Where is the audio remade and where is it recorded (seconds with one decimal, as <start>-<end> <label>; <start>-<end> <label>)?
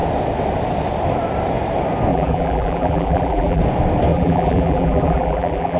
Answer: 0.0-2.1 recorded; 2.1-3.6 remade; 3.6-4.1 recorded; 4.1-5.8 remade